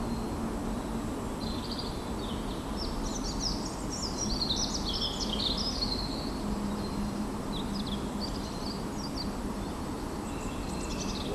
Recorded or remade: recorded